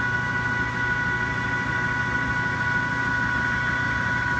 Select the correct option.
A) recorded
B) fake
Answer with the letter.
A